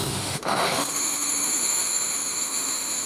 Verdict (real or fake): fake